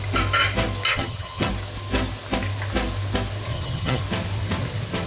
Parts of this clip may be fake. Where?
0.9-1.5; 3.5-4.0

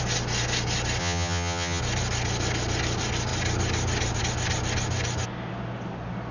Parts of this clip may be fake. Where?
1.0-1.8

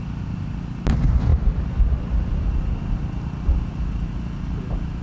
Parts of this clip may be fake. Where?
none

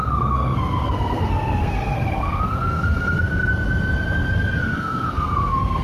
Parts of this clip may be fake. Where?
0.0-3.5; 4.6-5.8

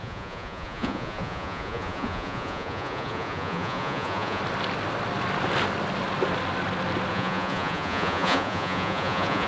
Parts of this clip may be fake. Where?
0.0-4.4; 7.1-9.5

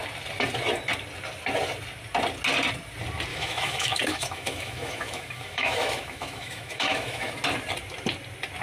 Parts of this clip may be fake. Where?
3.3-7.3